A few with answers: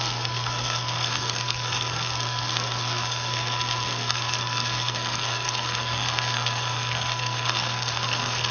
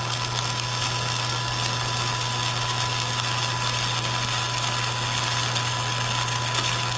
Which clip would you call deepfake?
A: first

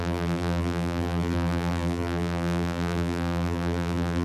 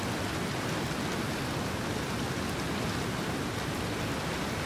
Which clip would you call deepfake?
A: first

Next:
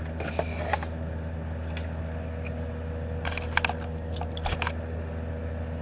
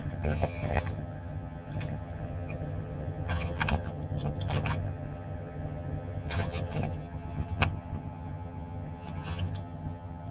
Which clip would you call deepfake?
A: second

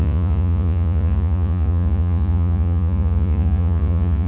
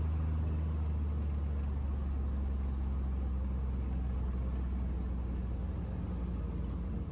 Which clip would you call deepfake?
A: first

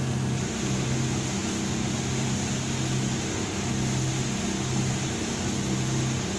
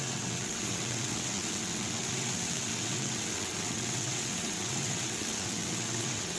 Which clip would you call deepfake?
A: second